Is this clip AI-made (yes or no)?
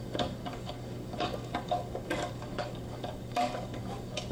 yes